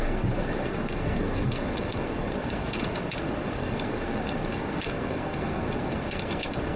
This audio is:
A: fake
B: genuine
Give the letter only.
A